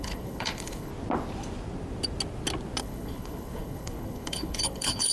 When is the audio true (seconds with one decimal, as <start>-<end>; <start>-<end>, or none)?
0.9-2.8

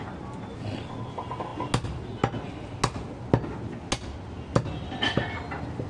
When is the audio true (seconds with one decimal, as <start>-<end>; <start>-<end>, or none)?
0.0-5.9

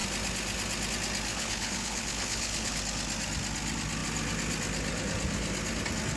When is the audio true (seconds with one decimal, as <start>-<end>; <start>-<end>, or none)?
0.0-1.3; 2.8-6.2